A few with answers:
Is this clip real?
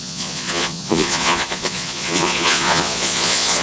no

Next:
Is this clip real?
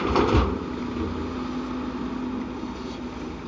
yes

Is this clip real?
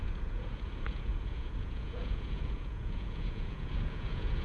no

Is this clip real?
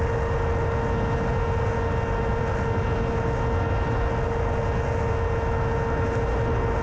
yes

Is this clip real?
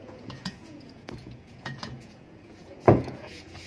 no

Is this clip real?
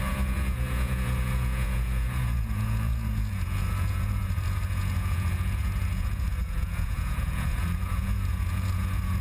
no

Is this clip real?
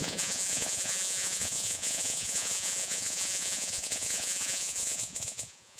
no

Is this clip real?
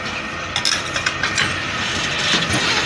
yes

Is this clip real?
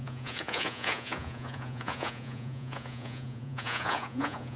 no